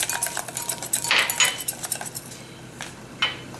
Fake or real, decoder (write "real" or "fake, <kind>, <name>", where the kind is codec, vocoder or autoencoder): real